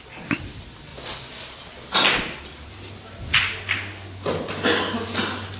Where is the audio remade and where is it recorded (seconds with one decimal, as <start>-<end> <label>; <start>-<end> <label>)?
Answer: 0.0-5.6 recorded